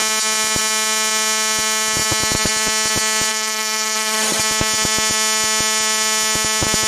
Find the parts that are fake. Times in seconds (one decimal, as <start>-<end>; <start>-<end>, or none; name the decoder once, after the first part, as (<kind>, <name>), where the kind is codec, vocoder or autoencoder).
3.3-4.4 (autoencoder, DAC-VAE)